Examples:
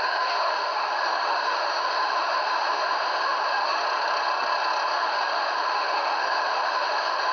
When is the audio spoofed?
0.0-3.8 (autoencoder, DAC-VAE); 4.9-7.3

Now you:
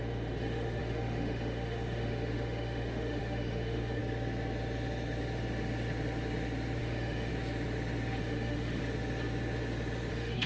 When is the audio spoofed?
0.0-4.0 (autoencoder, DAC-VAE); 6.8-7.3; 8.2-8.8; 10.1-10.5

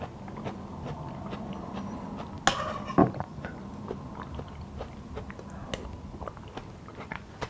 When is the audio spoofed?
3.0-3.6 (vocoder, Vocos); 6.9-7.5

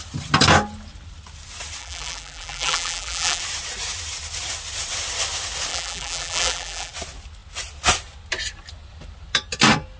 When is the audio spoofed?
1.8-3.4 (vocoder, BigVGAN v2); 5.7-6.9